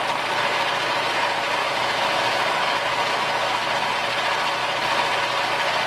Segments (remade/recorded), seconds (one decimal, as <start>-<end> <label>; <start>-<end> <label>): 0.0-1.6 recorded; 1.6-2.8 remade; 2.8-5.9 recorded